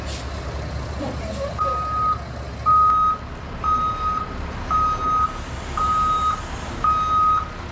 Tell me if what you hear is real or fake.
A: real